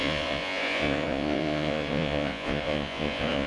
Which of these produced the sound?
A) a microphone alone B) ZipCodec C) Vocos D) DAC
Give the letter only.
C